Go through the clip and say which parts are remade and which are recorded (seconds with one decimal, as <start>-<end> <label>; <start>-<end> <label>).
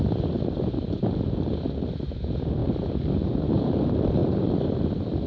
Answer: 0.0-5.3 recorded